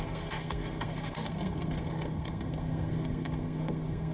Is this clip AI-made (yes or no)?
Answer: yes